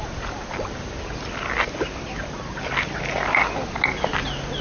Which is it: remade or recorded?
recorded